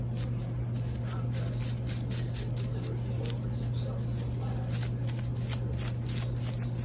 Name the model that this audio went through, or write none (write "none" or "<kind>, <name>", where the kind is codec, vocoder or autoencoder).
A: none